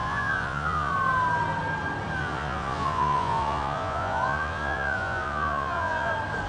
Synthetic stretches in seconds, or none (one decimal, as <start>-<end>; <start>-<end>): 0.0-0.9; 2.2-6.1